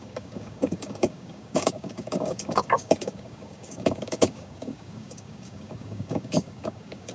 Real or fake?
fake